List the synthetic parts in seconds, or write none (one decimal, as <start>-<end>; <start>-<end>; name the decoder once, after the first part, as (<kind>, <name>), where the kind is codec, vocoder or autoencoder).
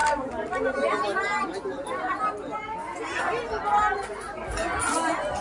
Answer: none